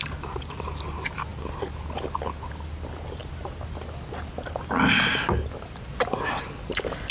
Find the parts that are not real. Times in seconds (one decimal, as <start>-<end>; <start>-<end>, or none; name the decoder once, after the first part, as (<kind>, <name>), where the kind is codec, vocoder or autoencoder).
none